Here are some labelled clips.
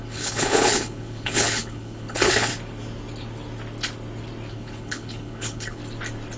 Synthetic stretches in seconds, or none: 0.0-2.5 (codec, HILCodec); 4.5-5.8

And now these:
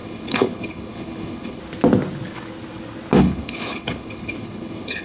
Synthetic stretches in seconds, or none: 0.0-1.6 (codec, HILCodec); 3.2-5.0

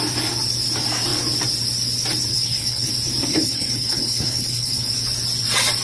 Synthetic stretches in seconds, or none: 2.3-2.9 (codec, HILCodec); 3.3-4.9

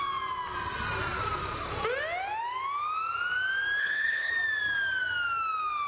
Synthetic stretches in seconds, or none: 3.8-4.3 (codec, HILCodec)